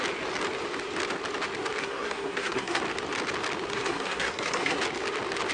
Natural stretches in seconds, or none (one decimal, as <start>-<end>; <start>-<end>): 0.0-1.8; 2.8-3.7; 4.8-5.5